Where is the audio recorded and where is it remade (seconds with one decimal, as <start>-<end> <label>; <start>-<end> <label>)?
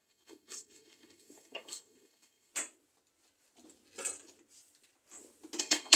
0.0-2.5 remade; 2.5-5.6 recorded; 5.6-6.0 remade